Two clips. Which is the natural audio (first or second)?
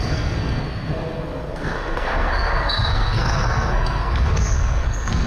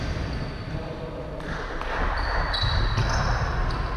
second